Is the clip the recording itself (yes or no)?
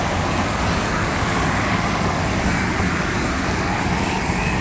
no